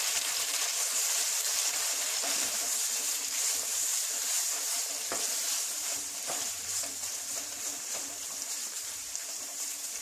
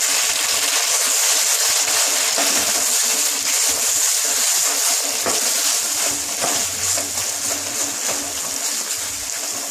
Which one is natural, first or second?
second